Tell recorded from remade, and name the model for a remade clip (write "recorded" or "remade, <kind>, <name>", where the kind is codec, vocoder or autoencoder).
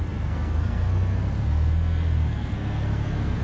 remade, codec, SNAC